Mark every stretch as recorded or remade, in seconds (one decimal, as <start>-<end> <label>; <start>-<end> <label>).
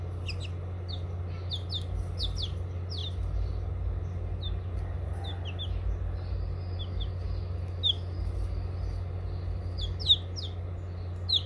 0.0-11.5 recorded